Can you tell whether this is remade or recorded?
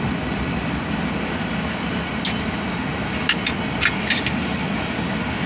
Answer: recorded